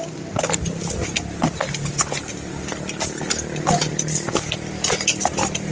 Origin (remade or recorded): recorded